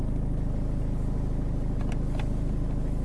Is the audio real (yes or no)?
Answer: yes